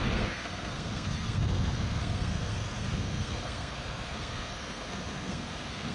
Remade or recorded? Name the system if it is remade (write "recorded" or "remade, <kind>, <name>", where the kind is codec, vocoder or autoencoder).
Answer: remade, codec, SNAC